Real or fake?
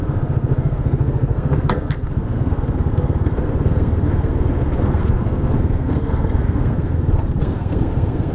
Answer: fake